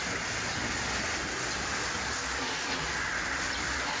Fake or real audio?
real